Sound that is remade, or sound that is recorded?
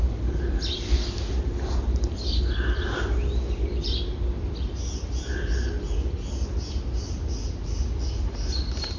recorded